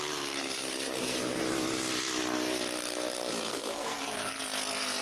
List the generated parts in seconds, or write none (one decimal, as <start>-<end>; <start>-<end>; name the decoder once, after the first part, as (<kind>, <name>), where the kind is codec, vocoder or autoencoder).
0.4-1.4 (codec, SNAC); 3.5-4.4